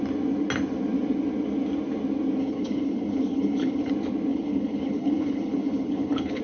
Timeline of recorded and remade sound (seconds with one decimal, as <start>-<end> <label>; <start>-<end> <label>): 0.0-2.4 recorded; 2.4-3.9 remade; 3.9-4.3 recorded; 4.3-6.4 remade